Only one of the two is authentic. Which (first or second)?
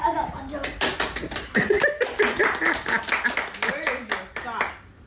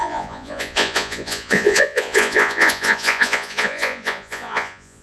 first